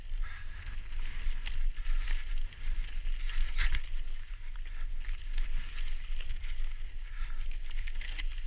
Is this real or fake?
real